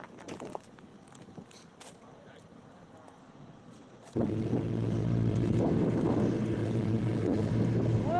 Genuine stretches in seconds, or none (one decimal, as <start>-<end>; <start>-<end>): 0.0-3.2; 5.6-6.6; 7.5-8.2